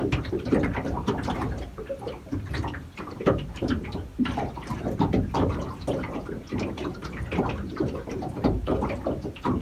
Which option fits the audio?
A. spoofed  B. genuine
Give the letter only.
A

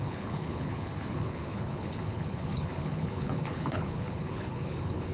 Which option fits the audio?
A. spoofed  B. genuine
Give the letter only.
A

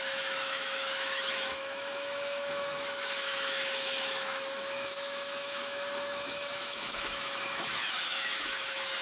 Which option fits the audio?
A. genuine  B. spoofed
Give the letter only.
B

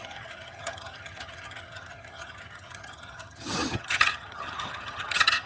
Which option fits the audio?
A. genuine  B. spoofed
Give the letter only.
B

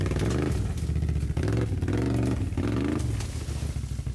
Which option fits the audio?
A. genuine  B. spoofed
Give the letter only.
A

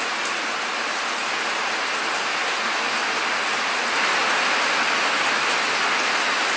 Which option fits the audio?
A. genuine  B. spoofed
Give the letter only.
A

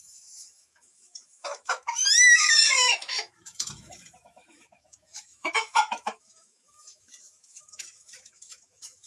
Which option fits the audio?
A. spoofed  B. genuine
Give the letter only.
A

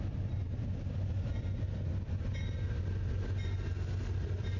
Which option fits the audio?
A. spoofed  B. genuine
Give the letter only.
B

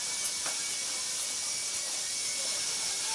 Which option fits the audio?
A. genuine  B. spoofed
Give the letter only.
A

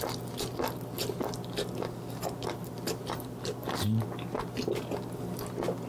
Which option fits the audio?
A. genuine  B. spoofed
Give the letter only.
A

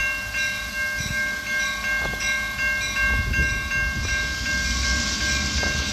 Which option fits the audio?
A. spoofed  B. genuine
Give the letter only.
B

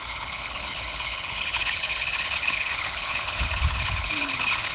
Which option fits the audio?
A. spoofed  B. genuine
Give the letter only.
A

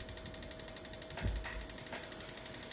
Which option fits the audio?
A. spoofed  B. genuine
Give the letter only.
B